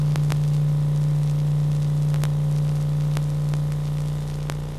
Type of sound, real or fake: real